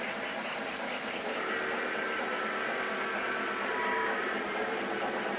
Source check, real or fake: fake